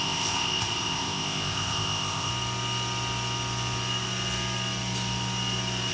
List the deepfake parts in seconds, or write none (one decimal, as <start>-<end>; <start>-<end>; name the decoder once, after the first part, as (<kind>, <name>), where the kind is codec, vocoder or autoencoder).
0.0-2.3 (codec, ZipCodec)